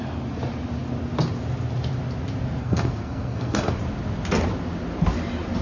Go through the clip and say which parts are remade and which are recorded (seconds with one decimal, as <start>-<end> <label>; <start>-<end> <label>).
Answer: 0.0-2.6 recorded; 2.6-3.7 remade; 3.7-5.6 recorded